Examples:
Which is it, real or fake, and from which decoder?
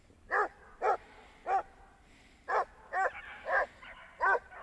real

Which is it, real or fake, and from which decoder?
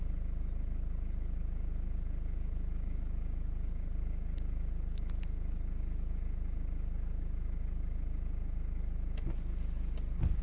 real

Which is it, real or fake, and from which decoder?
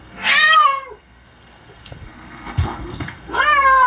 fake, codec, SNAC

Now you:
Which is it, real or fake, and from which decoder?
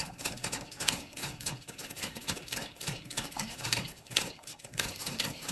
fake, codec, SNAC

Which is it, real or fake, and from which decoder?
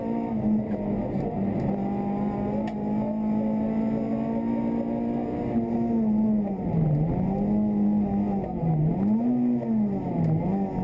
real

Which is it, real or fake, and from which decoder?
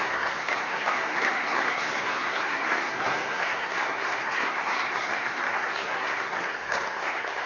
fake, codec, SNAC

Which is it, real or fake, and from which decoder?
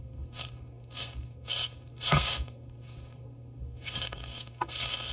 fake, codec, SNAC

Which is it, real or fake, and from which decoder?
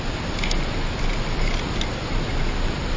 real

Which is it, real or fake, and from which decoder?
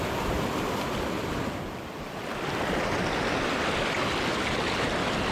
real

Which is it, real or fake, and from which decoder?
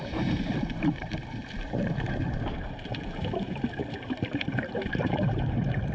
fake, vocoder, BigVGAN v2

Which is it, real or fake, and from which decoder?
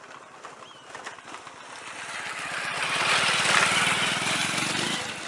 real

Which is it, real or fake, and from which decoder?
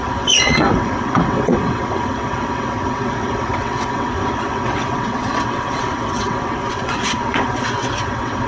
fake, vocoder, WaveNeXt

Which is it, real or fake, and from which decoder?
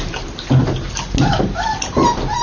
real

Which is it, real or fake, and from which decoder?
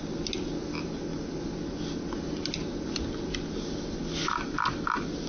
real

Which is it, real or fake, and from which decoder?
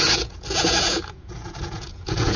fake, vocoder, Vocos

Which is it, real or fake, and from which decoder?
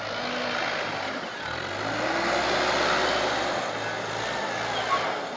real